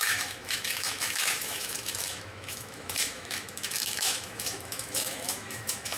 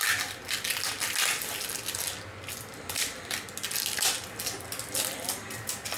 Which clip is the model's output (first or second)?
first